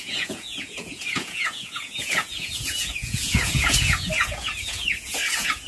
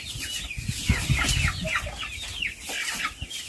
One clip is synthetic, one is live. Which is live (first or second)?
second